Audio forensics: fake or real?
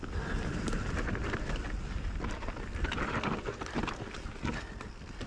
real